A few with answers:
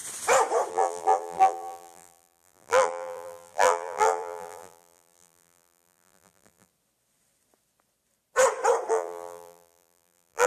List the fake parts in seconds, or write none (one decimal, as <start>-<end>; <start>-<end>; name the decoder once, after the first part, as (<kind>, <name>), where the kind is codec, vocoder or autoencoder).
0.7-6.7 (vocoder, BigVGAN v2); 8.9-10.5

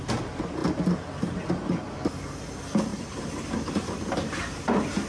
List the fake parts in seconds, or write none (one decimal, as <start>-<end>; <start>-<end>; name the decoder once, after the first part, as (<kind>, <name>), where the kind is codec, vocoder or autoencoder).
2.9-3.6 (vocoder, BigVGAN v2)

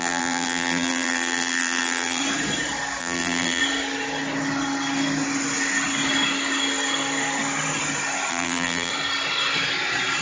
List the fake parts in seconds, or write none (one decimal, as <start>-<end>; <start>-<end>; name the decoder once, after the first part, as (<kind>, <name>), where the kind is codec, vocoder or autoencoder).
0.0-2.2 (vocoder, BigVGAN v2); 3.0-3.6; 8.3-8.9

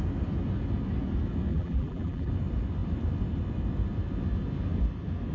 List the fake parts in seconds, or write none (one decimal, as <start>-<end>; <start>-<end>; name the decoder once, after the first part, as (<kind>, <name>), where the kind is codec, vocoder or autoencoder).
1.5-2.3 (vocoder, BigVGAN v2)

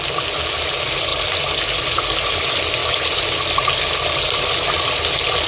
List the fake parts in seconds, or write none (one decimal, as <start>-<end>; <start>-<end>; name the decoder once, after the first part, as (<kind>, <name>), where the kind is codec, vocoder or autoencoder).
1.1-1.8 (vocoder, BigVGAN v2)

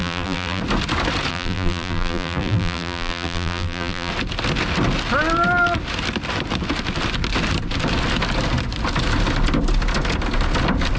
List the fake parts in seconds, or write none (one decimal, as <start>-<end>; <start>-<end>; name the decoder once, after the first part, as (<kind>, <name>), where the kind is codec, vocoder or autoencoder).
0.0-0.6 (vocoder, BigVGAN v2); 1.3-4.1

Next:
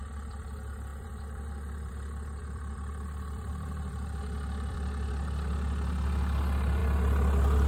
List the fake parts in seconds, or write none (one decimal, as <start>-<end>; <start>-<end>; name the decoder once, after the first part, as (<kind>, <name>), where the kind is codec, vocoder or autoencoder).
0.9-1.9 (vocoder, BigVGAN v2); 2.4-5.1